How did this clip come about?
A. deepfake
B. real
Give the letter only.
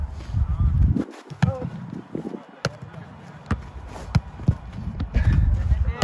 B